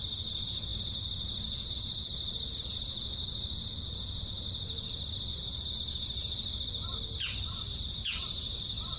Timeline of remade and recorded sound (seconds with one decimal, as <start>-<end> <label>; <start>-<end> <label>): 0.0-9.0 recorded